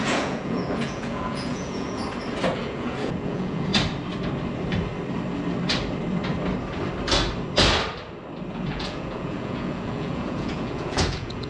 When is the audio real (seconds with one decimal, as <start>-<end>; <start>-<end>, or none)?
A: 2.0-2.5; 3.7-8.5